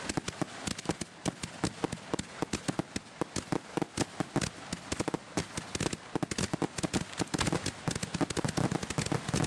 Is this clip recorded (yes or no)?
yes